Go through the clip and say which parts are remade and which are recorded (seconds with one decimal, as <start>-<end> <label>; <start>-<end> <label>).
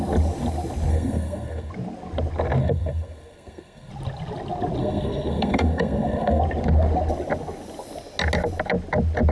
0.0-0.9 recorded; 0.9-1.7 remade; 1.7-2.6 recorded; 2.6-3.9 remade; 3.9-4.8 recorded; 4.8-6.4 remade; 6.4-9.3 recorded